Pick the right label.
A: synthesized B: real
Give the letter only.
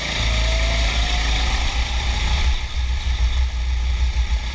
B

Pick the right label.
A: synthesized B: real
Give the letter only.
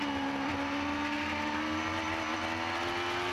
B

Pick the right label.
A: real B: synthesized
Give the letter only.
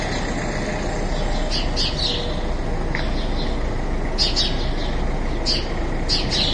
A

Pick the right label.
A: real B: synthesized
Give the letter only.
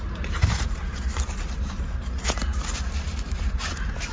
B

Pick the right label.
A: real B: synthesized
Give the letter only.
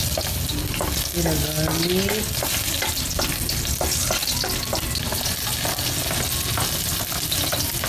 A